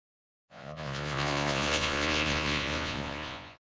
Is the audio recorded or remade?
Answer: remade